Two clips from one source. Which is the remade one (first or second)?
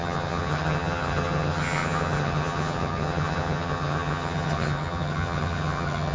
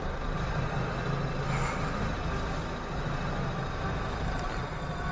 first